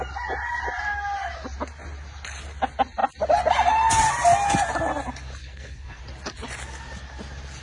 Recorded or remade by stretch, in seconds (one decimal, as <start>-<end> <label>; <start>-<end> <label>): 0.0-5.4 recorded; 5.4-6.0 remade; 6.0-7.6 recorded